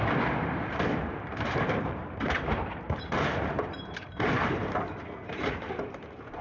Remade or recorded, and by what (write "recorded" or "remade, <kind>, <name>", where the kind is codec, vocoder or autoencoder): remade, vocoder, BigVGAN v2